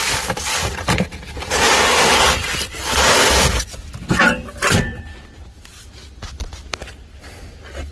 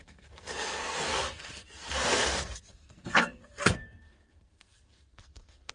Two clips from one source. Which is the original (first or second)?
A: first